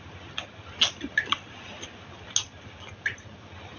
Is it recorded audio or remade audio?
recorded